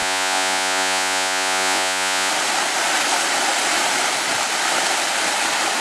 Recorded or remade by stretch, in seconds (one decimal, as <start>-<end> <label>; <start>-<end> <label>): 0.0-2.3 remade; 2.3-5.8 recorded